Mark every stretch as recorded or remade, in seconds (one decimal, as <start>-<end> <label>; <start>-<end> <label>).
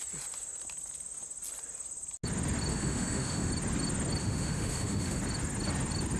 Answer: 0.0-2.7 recorded; 2.7-3.5 remade; 3.5-4.2 recorded; 4.2-5.2 remade; 5.2-6.2 recorded